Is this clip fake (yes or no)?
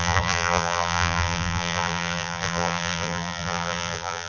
yes